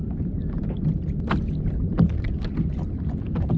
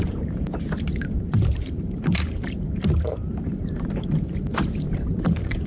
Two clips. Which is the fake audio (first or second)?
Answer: second